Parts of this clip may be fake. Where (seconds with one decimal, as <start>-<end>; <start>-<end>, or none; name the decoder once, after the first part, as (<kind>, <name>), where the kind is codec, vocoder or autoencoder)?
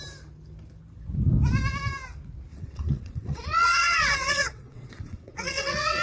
2.5-6.0 (vocoder, WaveNeXt)